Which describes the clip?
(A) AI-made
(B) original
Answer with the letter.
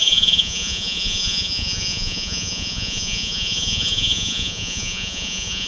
A